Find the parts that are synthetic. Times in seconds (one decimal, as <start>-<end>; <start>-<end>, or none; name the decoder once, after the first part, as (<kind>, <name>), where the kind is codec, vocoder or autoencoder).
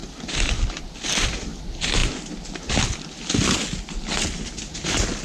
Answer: none